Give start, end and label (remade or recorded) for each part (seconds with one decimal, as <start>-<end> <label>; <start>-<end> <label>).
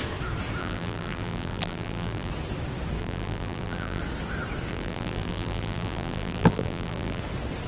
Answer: 0.0-0.6 recorded; 0.6-2.3 remade; 2.3-3.0 recorded; 3.0-4.0 remade; 4.0-4.7 recorded; 4.7-7.2 remade; 7.2-7.7 recorded